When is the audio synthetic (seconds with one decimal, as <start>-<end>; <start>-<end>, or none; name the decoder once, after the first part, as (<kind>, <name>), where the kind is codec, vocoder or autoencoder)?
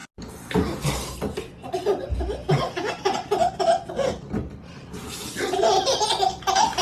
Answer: none